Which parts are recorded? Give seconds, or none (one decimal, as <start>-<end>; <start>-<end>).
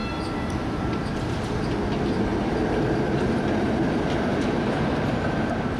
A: 0.0-5.8